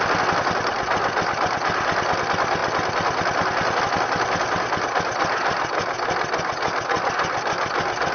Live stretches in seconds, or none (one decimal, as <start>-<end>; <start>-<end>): 0.0-8.1